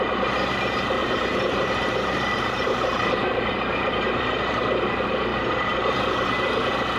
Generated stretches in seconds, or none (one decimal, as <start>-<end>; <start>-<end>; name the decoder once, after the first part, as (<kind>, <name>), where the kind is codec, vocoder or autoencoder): 1.0-4.2 (vocoder, BigVGAN v2)